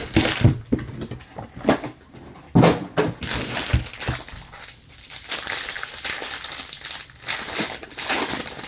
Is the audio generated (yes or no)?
no